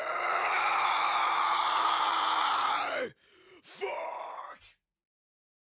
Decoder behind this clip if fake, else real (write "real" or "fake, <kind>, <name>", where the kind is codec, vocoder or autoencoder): real